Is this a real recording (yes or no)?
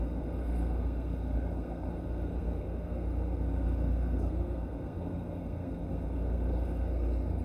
no